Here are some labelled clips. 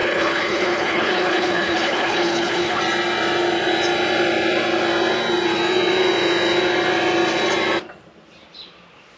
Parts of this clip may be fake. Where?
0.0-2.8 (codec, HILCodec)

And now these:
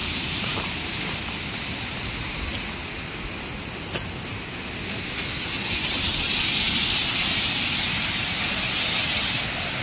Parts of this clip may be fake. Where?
0.0-1.0 (vocoder, BigVGAN v2)

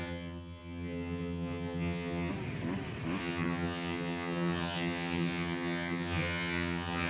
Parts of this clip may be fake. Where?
0.0-2.3 (vocoder, HiFi-GAN); 3.2-7.1

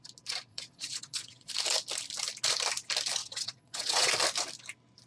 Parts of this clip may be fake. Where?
0.5-1.5 (vocoder, WaveNeXt); 3.2-4.1

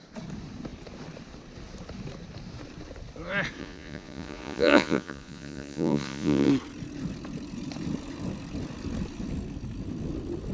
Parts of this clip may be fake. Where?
3.6-6.5 (vocoder, Vocos)

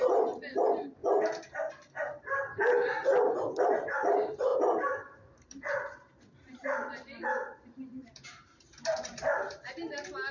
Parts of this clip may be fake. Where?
0.0-1.0 (vocoder, BigVGAN v2); 1.7-2.8; 3.8-10.3

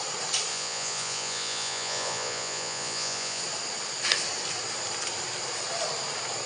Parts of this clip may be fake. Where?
0.5-3.4 (vocoder, Vocos)